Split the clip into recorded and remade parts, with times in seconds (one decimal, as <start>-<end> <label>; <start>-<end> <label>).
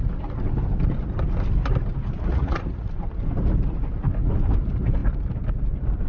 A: 0.0-2.3 recorded; 2.3-2.9 remade; 2.9-6.1 recorded